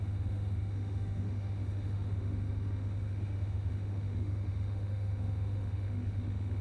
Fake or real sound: fake